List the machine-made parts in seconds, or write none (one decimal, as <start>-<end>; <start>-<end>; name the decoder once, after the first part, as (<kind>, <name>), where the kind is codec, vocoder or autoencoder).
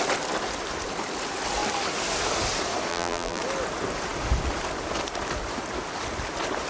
2.9-3.4 (vocoder, BigVGAN v2)